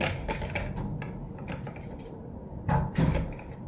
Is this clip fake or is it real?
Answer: real